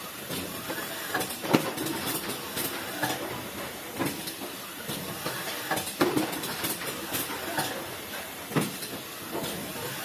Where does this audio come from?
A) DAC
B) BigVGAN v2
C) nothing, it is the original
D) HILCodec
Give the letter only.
B